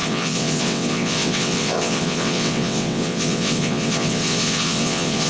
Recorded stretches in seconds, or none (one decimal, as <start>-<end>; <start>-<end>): none